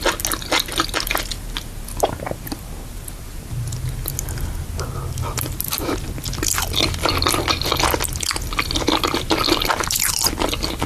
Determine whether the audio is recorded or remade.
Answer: recorded